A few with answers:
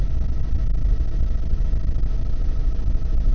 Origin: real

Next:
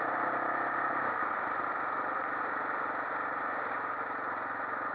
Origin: real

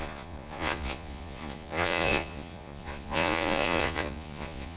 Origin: fake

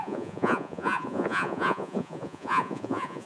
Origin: fake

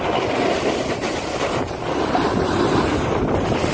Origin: real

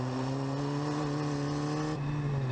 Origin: real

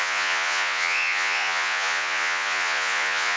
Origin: fake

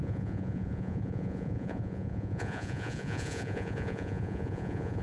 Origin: fake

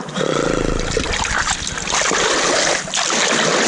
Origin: real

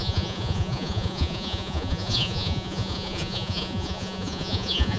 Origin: fake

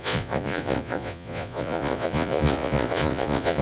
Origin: fake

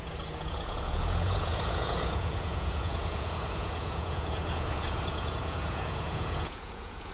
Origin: fake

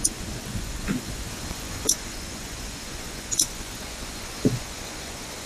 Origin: fake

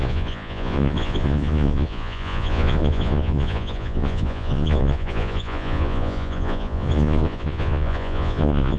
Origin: fake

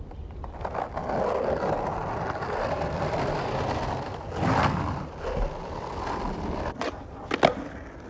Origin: real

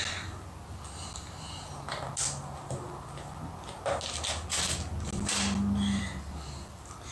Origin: real